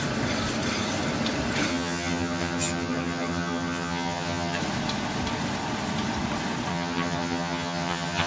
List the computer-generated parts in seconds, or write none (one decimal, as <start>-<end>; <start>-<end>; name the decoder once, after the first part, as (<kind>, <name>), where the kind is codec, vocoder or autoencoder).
1.7-4.6 (vocoder, HiFi-GAN); 6.7-8.3